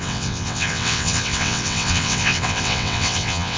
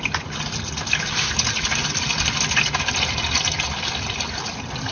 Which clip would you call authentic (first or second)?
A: second